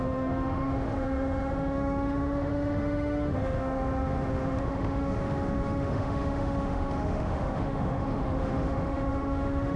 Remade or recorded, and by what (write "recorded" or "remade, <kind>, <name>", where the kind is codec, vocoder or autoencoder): remade, autoencoder, DAC-VAE